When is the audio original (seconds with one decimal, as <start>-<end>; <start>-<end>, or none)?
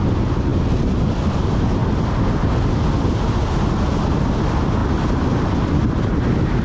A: 0.0-6.6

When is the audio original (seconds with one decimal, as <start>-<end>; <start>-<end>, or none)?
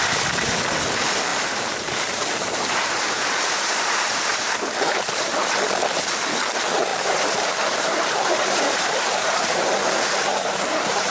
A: 0.0-1.3; 4.7-6.9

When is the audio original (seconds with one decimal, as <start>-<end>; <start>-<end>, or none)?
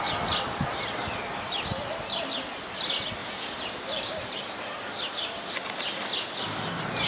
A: 0.0-3.2; 4.3-7.1